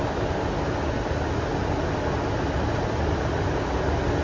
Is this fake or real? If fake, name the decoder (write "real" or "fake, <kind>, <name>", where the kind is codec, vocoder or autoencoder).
real